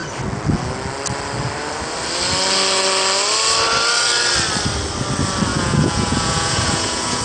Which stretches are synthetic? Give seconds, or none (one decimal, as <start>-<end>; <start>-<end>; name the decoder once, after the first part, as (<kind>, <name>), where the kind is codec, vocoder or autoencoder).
5.5-7.2 (vocoder, Vocos)